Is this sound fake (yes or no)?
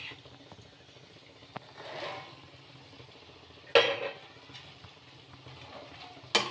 no